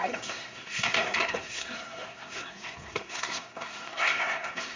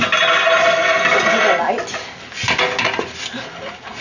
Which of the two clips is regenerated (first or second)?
first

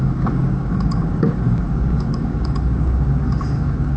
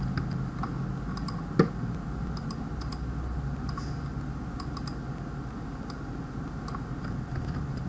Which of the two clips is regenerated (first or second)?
first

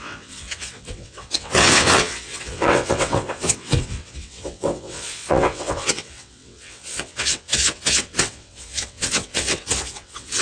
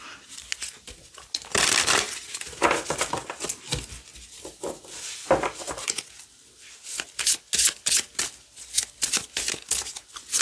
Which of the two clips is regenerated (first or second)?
first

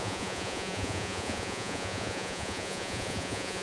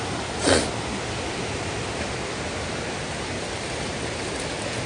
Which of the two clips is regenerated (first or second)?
first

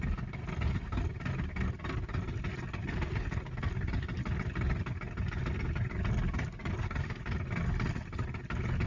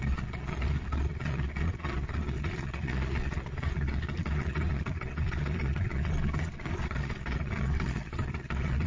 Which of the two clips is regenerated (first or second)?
second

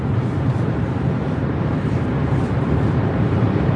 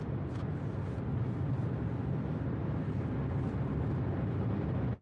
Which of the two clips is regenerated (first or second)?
first